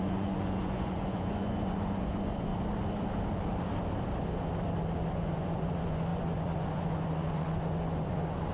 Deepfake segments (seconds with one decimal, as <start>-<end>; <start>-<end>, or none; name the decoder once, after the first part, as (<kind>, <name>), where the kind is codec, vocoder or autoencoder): 0.0-2.5 (vocoder, Vocos); 5.1-8.5